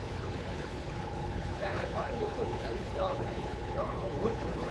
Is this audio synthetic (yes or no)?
yes